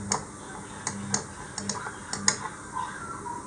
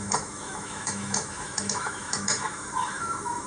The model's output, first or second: second